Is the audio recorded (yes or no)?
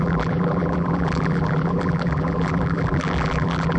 no